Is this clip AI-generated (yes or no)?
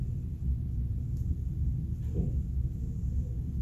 no